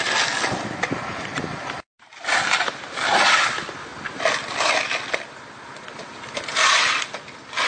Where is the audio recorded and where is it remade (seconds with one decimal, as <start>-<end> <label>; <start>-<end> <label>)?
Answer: 0.0-1.3 recorded; 1.3-3.0 remade; 3.0-7.7 recorded